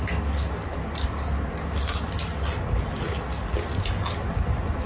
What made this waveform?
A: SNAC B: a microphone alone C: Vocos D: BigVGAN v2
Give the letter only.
B